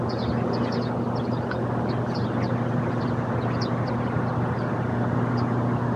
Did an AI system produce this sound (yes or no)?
no